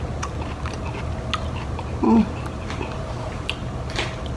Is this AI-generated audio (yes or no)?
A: no